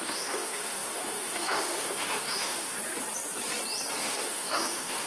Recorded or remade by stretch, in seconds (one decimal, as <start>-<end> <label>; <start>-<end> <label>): 0.0-2.8 remade; 2.8-4.0 recorded; 4.0-5.1 remade